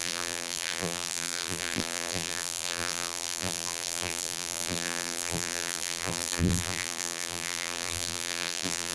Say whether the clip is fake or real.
fake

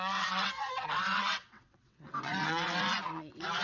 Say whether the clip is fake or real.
fake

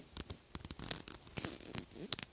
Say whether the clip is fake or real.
real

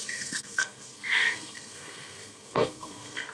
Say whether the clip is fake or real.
fake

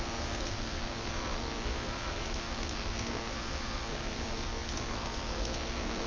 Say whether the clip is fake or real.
fake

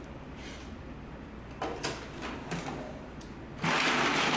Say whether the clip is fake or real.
real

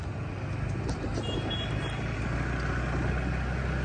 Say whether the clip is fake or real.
real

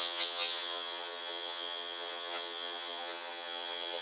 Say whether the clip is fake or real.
fake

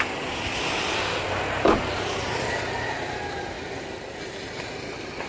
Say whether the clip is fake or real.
real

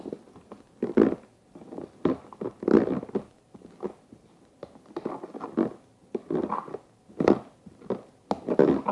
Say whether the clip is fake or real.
real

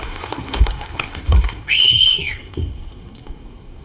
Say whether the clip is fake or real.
fake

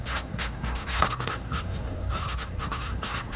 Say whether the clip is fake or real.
fake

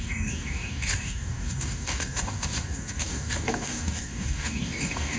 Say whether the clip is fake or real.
fake